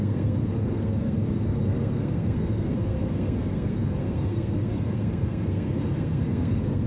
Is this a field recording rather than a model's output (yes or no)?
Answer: no